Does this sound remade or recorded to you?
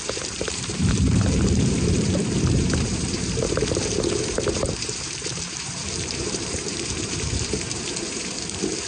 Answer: remade